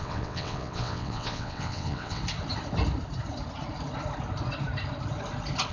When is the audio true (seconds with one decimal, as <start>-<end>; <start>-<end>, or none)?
2.2-5.7